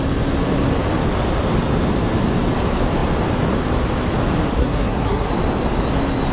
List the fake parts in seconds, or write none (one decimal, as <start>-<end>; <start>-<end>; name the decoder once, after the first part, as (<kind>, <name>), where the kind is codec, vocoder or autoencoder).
4.6-5.3 (codec, SNAC)